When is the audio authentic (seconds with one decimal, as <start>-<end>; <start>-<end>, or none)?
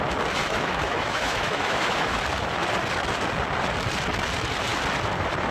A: 0.0-0.4; 2.2-5.5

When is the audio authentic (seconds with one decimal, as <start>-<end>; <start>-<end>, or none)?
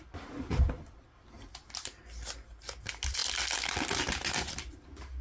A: 0.0-5.2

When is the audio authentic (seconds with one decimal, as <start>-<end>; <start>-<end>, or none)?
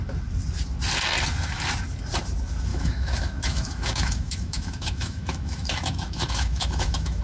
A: 0.0-2.7